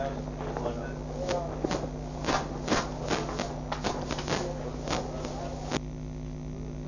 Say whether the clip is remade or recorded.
recorded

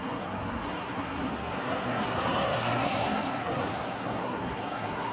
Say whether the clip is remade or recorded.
remade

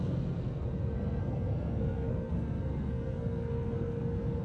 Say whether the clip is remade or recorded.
remade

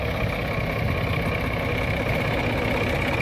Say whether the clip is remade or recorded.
recorded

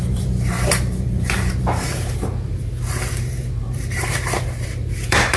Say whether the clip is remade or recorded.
remade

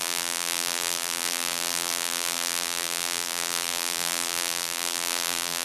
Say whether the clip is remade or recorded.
remade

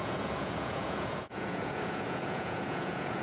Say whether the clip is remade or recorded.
remade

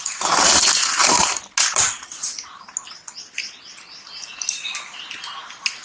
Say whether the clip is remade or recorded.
recorded